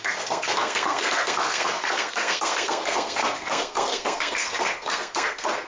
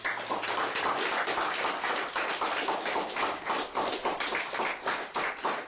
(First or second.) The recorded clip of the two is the second